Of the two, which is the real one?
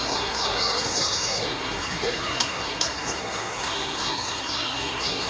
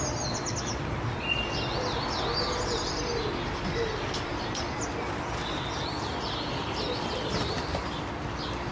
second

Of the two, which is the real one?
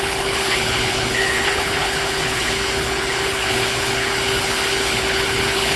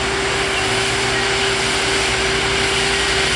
second